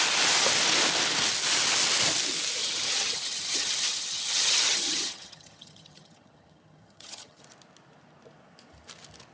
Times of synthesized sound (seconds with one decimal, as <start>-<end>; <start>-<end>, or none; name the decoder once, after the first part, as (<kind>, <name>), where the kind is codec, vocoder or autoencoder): 2.6-7.4 (vocoder, HiFi-GAN)